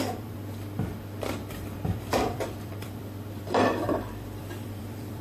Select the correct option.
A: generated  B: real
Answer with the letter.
A